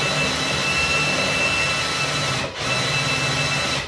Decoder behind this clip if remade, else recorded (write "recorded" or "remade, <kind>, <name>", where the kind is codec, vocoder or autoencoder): recorded